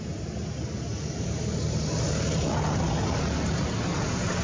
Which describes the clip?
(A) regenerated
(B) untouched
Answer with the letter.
B